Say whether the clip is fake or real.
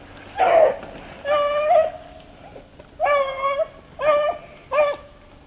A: real